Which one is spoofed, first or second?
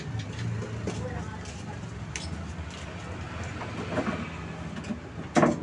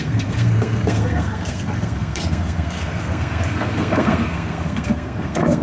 second